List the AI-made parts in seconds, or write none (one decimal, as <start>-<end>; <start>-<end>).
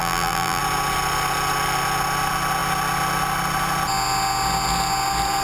0.0-0.6